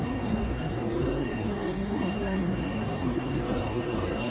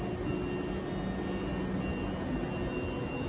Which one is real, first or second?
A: second